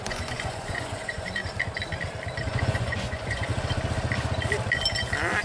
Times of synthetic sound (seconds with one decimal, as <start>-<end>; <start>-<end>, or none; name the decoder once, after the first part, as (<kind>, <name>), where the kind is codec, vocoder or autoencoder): 0.0-1.4 (vocoder, Vocos); 2.4-3.5